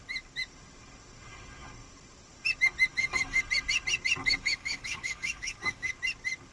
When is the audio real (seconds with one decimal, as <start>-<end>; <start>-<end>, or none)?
0.0-2.9; 3.4-4.2; 5.9-6.5